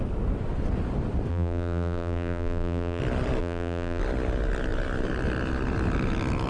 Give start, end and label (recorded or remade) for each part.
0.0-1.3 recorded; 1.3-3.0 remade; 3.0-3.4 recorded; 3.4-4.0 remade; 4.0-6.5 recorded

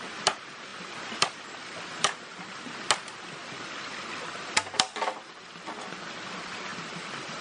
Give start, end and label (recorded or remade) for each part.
0.0-0.7 recorded; 0.7-2.0 remade; 2.0-3.4 recorded; 3.4-5.3 remade; 5.3-6.7 recorded; 6.7-7.4 remade

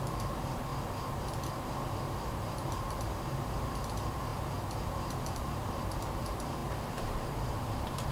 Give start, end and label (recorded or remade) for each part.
0.0-0.7 remade; 0.7-1.6 recorded; 1.6-4.3 remade; 4.3-4.9 recorded; 4.9-8.1 remade

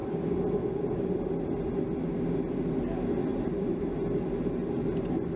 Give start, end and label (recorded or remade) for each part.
0.0-3.3 recorded; 3.3-3.8 remade; 3.8-5.4 recorded